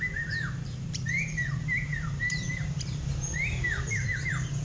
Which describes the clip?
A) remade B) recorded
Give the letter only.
A